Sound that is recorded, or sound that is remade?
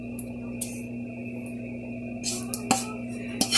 recorded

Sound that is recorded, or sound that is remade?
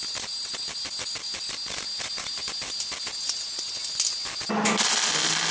recorded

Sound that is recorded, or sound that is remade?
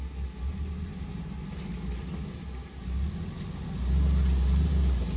recorded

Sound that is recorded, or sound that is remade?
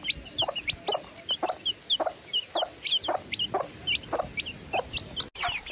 recorded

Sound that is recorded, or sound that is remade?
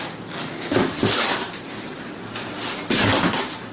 recorded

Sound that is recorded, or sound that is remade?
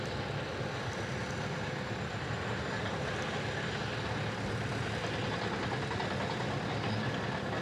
recorded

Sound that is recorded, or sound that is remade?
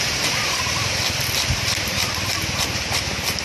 recorded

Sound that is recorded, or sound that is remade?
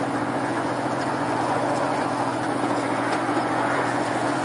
remade